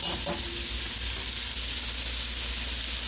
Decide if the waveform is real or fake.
real